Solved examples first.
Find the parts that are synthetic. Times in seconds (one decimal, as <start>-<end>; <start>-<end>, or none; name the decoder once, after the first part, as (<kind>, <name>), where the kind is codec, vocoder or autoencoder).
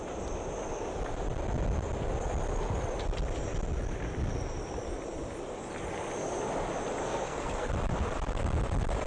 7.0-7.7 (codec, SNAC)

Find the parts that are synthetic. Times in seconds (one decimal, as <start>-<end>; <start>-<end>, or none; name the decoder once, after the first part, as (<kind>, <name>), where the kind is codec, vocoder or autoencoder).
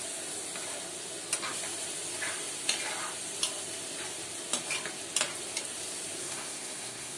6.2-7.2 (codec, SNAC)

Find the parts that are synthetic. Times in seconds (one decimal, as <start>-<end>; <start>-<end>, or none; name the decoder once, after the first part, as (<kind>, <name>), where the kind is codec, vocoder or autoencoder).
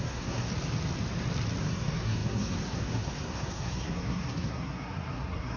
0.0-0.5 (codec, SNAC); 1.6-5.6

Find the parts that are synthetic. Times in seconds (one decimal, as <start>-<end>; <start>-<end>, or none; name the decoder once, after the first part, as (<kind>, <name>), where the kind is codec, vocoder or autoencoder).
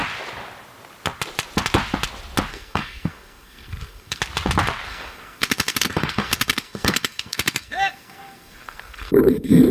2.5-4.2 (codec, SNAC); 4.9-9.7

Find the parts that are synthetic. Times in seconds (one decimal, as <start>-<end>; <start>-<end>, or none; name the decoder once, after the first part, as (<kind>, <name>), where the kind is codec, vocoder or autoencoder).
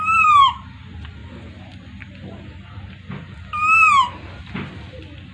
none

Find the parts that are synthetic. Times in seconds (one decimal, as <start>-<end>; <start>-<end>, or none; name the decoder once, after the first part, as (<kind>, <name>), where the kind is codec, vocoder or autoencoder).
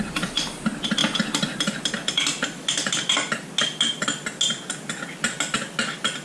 none